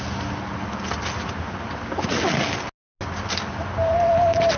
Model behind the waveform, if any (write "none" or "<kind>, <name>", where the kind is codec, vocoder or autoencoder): none